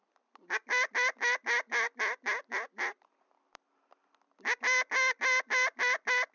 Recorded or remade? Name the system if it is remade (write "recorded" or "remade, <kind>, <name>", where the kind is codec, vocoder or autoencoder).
recorded